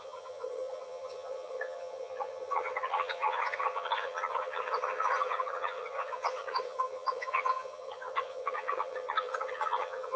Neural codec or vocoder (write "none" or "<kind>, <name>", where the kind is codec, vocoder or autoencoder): vocoder, HiFi-GAN